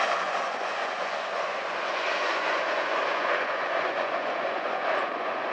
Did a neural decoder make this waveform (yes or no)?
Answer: yes